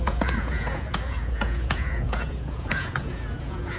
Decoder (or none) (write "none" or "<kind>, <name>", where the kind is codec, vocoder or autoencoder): vocoder, Vocos